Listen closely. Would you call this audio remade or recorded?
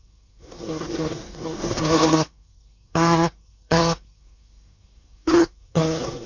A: remade